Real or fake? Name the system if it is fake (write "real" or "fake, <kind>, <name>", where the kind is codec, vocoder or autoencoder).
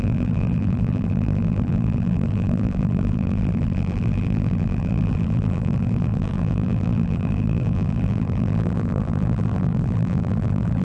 fake, vocoder, BigVGAN v2